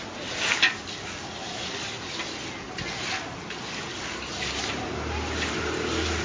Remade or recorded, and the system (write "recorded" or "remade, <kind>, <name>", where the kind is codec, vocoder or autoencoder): recorded